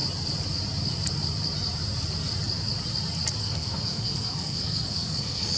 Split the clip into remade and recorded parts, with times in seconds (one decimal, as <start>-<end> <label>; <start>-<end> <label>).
0.0-3.4 recorded; 3.4-5.6 remade